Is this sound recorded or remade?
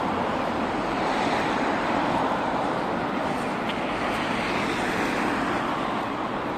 recorded